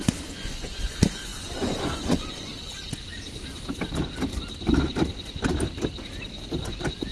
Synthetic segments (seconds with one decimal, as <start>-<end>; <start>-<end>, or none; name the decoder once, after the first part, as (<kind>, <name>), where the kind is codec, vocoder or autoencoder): 0.0-2.5 (vocoder, Vocos); 6.6-7.1